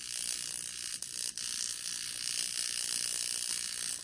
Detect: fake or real real